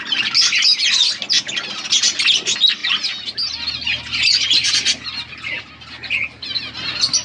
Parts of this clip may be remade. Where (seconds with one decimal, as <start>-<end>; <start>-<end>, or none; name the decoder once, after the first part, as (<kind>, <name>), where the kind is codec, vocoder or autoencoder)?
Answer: none